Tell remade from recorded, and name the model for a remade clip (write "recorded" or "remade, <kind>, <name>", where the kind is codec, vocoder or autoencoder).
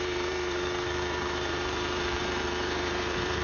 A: remade, vocoder, BigVGAN v2